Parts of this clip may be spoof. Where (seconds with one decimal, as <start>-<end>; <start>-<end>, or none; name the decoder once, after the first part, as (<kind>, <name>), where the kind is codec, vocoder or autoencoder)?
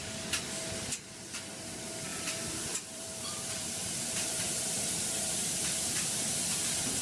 2.1-6.3 (vocoder, BigVGAN v2)